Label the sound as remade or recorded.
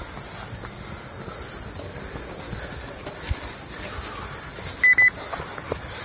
recorded